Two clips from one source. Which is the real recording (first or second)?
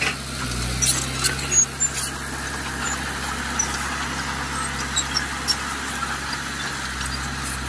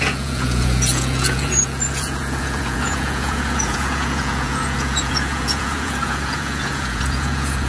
first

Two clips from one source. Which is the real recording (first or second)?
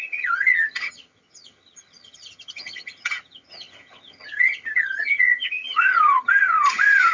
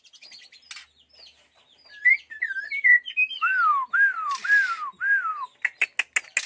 second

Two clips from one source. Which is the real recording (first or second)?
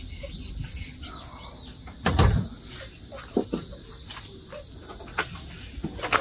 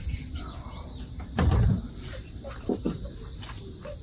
first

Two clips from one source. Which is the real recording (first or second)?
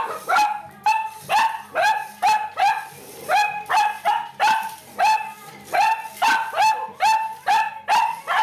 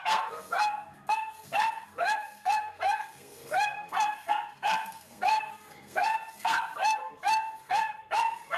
first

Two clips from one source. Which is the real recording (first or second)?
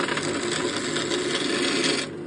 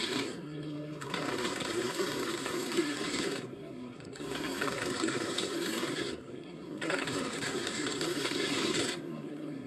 first